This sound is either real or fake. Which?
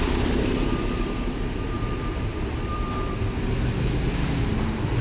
fake